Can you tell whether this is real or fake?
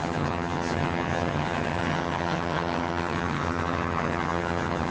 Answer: fake